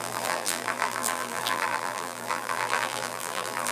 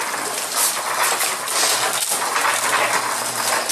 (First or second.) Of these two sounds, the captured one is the second